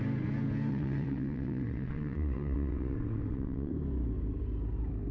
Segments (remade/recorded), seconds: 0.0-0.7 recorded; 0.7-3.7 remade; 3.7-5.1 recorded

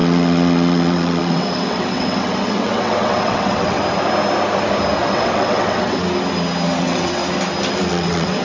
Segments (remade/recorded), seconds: 0.0-3.8 remade; 3.8-5.1 recorded; 5.1-6.0 remade; 6.0-6.8 recorded; 6.8-7.2 remade; 7.2-7.9 recorded; 7.9-8.4 remade

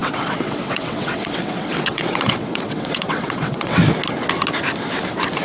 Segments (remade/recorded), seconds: 0.0-3.8 remade; 3.8-5.4 recorded

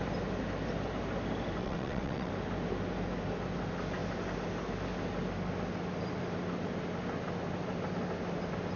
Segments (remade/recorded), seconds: 0.0-1.6 recorded; 1.6-2.3 remade; 2.3-8.8 recorded

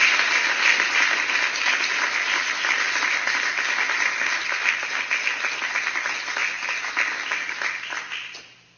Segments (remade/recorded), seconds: 0.0-8.8 recorded

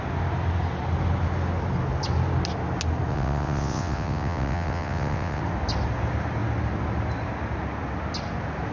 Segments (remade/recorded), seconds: 0.0-3.1 recorded; 3.1-5.4 remade; 5.4-8.7 recorded

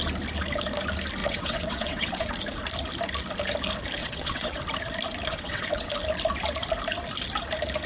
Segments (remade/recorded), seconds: 0.0-1.2 recorded; 1.2-2.3 remade; 2.3-4.0 recorded; 4.0-4.6 remade; 4.6-5.3 recorded; 5.3-5.9 remade; 5.9-7.9 recorded

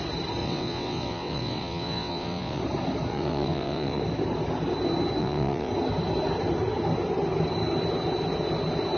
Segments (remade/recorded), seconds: 0.0-0.4 recorded; 0.4-2.6 remade; 2.6-3.1 recorded; 3.1-4.0 remade; 4.0-5.2 recorded; 5.2-5.7 remade; 5.7-9.0 recorded